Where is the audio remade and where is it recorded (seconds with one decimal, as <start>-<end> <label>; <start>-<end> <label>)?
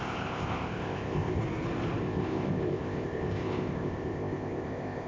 0.0-1.4 remade; 1.4-2.0 recorded; 2.0-5.1 remade